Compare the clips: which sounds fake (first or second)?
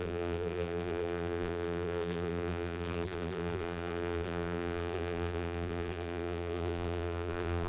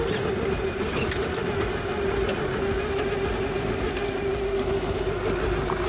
first